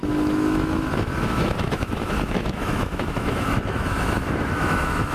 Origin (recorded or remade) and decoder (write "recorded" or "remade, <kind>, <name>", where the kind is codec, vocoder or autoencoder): remade, autoencoder, DAC-VAE